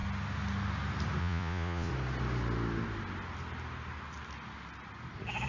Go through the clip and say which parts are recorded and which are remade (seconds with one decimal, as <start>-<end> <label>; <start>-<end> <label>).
0.0-1.2 recorded; 1.2-1.9 remade; 1.9-5.5 recorded